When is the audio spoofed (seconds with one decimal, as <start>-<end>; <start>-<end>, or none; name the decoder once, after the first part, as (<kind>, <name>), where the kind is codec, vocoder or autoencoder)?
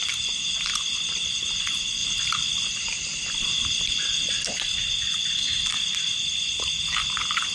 none